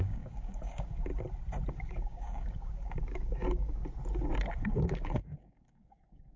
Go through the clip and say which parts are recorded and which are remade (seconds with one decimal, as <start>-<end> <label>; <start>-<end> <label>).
0.0-1.1 remade; 1.1-1.7 recorded; 1.7-3.8 remade; 3.8-4.6 recorded; 4.6-6.4 remade